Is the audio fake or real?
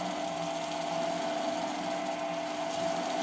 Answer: real